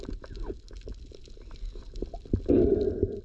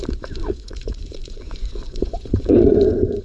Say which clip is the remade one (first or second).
second